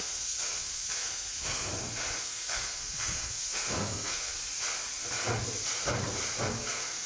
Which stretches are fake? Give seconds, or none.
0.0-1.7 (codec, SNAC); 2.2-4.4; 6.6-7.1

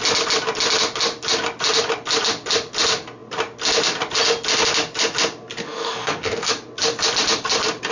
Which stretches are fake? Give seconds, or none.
5.6-6.5 (codec, SNAC)

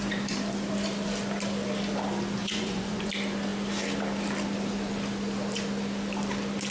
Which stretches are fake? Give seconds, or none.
2.4-3.1 (vocoder, Vocos)

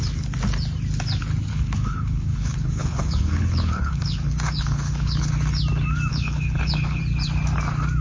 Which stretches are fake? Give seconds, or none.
1.5-5.3 (codec, HILCodec); 6.1-7.0

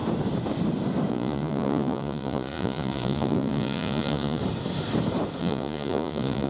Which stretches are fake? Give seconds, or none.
1.1-4.4 (vocoder, Vocos); 5.4-6.5

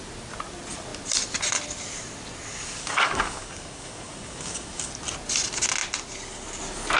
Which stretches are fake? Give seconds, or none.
2.5-4.9 (codec, DAC)